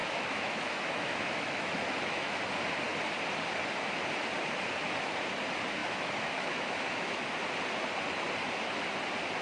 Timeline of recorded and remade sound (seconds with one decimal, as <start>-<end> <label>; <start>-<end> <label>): 0.0-2.4 remade; 2.4-5.8 recorded; 5.8-7.2 remade; 7.2-9.4 recorded